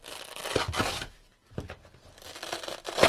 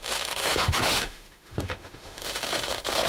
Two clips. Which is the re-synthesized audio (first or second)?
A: second